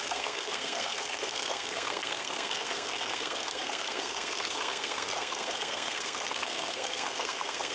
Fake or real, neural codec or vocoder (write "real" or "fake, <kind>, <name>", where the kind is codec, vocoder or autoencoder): fake, codec, SNAC